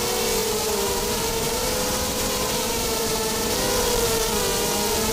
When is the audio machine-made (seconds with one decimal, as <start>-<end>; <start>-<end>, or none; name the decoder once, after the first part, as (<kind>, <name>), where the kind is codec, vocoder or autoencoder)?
0.4-3.5 (vocoder, BigVGAN v2)